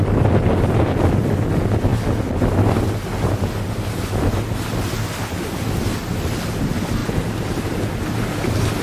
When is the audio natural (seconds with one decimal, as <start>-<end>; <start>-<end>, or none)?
0.0-8.8